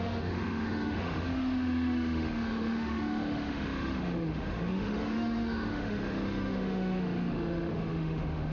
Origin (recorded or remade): remade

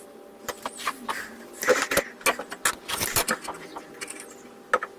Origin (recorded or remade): recorded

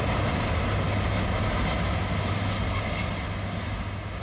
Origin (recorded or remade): recorded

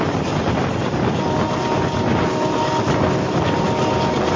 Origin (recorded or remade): recorded